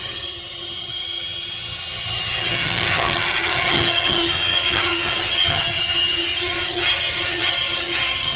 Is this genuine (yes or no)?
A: no